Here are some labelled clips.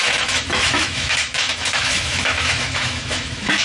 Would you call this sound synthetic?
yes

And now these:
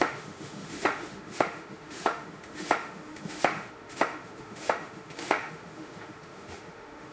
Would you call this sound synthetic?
yes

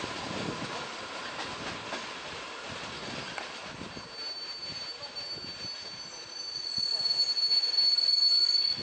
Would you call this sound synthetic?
no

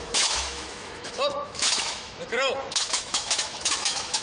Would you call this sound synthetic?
yes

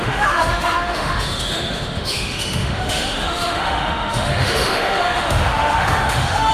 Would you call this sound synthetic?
yes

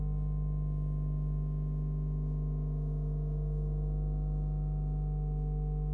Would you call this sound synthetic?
yes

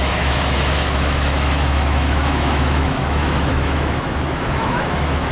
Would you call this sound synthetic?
yes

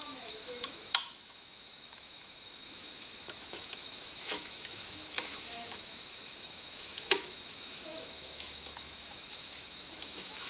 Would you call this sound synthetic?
yes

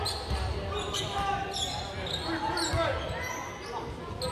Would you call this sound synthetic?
no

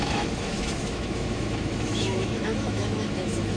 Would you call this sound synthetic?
yes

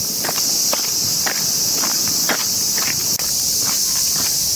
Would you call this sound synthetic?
no